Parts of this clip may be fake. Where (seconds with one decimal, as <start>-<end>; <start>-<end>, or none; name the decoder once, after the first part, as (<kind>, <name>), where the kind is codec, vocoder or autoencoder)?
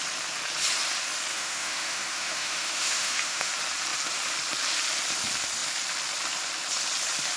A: 1.3-3.5 (autoencoder, DAC-VAE)